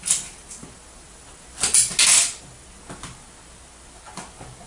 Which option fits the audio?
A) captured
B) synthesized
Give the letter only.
A